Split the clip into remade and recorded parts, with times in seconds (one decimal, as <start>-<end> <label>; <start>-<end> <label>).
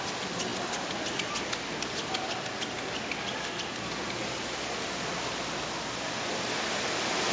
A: 0.0-7.3 recorded